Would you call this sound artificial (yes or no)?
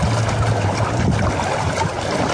no